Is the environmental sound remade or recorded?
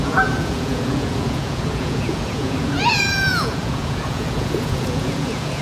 remade